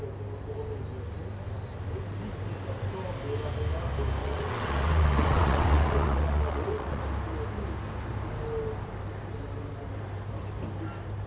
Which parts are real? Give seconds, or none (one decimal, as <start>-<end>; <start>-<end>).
0.0-4.2; 7.0-11.3